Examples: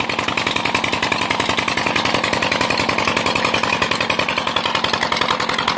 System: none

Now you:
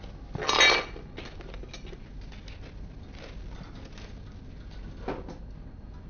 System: none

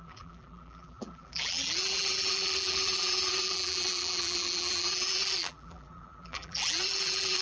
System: vocoder, BigVGAN v2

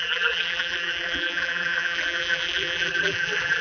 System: vocoder, BigVGAN v2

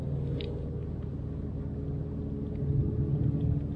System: none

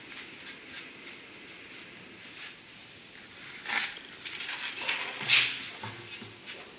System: none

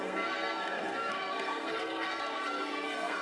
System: codec, SNAC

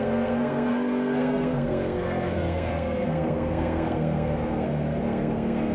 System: codec, SNAC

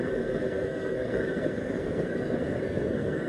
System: codec, SNAC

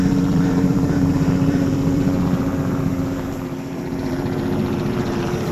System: vocoder, BigVGAN v2